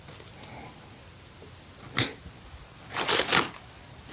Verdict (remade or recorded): recorded